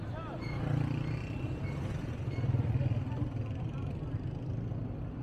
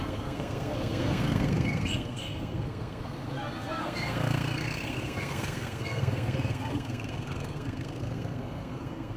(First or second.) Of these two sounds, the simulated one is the second